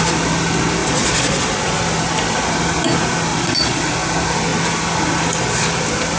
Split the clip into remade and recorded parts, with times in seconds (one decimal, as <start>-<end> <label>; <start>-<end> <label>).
0.0-0.8 recorded; 0.8-1.8 remade; 1.8-3.3 recorded; 3.3-3.9 remade; 3.9-6.2 recorded